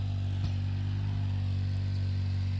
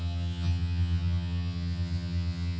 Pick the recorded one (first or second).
first